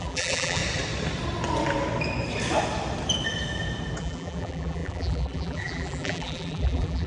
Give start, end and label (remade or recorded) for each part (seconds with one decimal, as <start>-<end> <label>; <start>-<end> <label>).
0.0-0.6 remade; 0.6-4.0 recorded; 4.0-7.1 remade